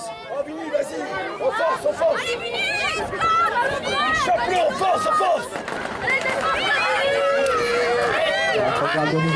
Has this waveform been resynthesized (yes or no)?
no